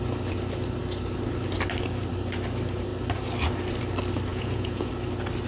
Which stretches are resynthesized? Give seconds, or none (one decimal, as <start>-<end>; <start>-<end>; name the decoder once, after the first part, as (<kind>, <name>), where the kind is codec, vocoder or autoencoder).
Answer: 4.3-4.9 (vocoder, Vocos)